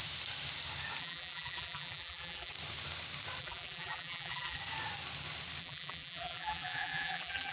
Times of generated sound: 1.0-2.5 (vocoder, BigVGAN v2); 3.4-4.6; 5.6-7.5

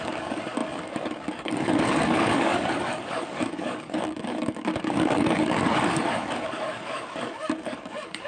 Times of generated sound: 0.0-8.3 (codec, DAC)

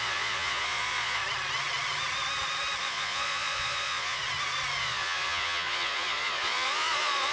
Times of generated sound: 0.0-1.2 (vocoder, Vocos); 2.8-4.2; 4.8-7.3

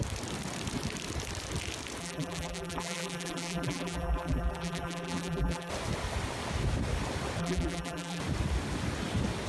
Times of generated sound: 2.0-5.7 (vocoder, BigVGAN v2); 7.4-8.2

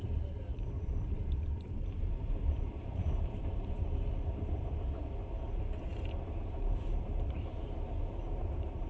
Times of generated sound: 0.5-3.9 (vocoder, BigVGAN v2)